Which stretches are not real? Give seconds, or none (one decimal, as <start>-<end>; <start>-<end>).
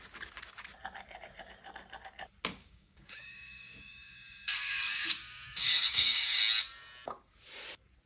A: 2.6-6.4